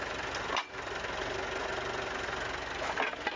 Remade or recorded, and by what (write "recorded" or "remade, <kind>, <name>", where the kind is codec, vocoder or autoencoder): recorded